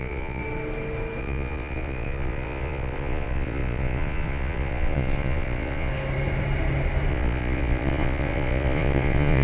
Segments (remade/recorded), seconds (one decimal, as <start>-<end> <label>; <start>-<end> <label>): 0.0-0.4 remade; 0.4-1.2 recorded; 1.2-5.9 remade; 5.9-7.1 recorded; 7.1-9.4 remade